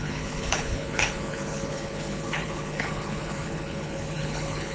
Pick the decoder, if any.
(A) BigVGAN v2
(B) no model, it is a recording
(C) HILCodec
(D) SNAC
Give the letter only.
C